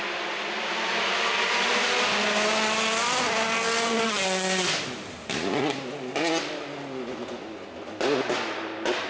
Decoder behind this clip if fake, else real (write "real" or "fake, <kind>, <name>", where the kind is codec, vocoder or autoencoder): real